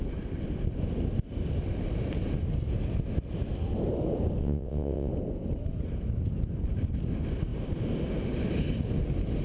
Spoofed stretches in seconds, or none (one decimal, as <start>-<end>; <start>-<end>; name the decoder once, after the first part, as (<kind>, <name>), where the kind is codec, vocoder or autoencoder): 4.4-5.1 (vocoder, WaveNeXt)